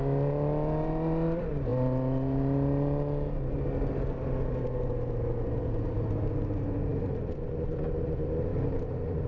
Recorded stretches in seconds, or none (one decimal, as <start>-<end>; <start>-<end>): 0.0-9.3